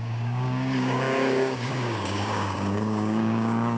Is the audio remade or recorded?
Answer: remade